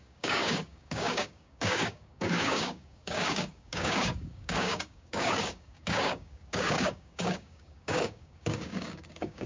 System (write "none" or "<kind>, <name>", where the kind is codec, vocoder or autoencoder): codec, DAC